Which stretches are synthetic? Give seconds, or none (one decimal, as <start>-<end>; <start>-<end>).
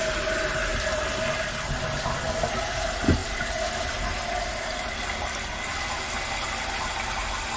none